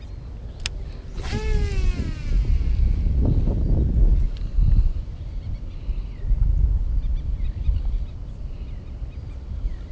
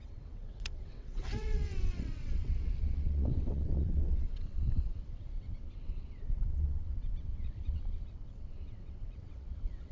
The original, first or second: first